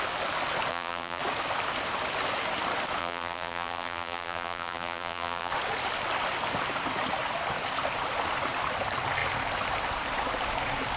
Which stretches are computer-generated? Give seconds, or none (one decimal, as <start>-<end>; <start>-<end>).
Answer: 0.7-1.2; 3.0-5.5